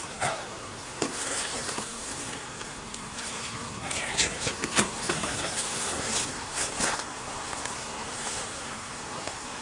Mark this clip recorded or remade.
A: remade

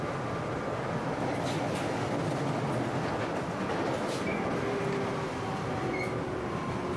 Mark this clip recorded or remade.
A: recorded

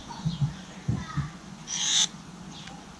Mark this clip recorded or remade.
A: remade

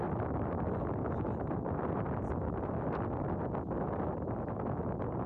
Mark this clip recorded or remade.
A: recorded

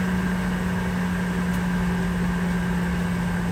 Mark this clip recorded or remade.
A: recorded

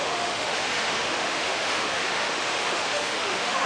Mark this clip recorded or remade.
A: remade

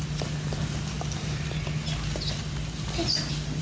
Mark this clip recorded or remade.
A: recorded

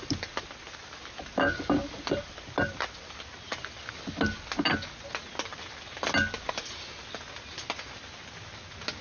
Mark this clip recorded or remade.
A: recorded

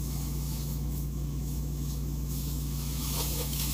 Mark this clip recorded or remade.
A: remade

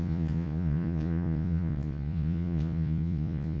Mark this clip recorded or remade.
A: remade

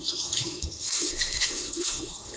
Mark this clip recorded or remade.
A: remade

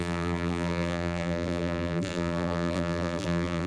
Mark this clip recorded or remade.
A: remade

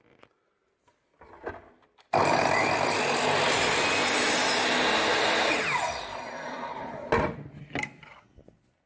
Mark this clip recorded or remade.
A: recorded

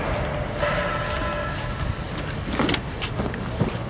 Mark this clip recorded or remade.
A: recorded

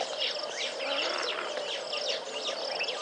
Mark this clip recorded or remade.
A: recorded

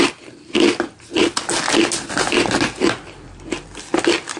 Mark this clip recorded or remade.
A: recorded